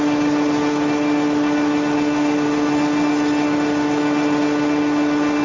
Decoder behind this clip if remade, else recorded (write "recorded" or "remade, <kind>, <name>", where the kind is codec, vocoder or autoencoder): recorded